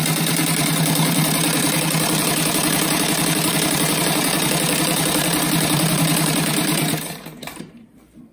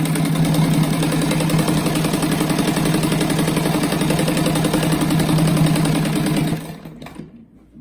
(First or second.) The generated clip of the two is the first